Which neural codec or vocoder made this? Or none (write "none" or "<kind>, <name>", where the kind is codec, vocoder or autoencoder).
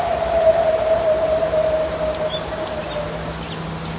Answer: none